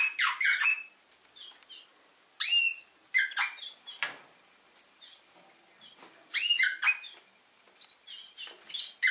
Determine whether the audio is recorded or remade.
recorded